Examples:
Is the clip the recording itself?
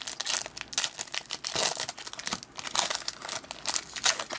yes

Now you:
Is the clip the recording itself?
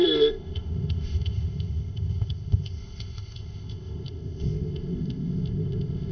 no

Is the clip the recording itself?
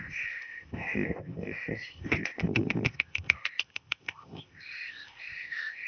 no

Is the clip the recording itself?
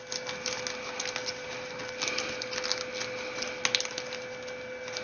yes